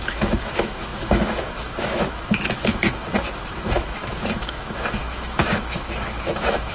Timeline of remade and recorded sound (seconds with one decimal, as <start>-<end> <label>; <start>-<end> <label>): 0.0-6.7 remade